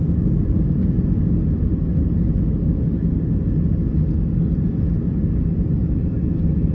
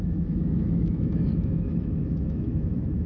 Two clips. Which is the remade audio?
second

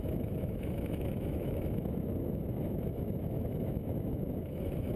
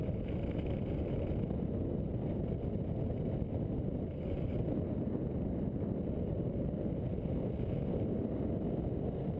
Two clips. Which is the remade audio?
first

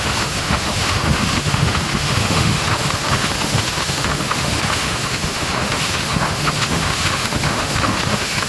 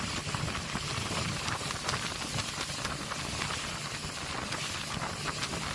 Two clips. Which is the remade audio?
first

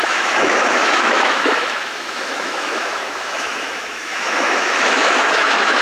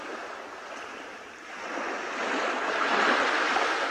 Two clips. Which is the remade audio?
first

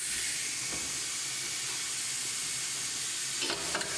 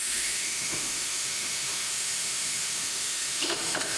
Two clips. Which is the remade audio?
second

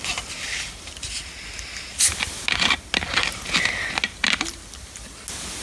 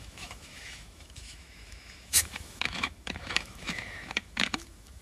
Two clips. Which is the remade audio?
second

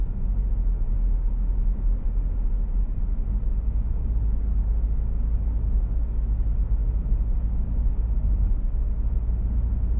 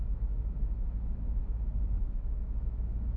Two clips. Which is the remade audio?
second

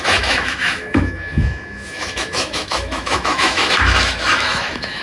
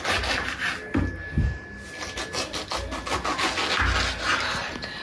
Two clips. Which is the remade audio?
first